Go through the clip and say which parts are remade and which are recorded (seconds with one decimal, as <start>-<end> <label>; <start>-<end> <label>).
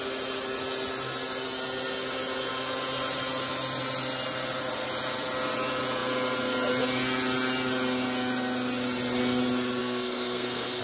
0.0-9.8 recorded; 9.8-10.8 remade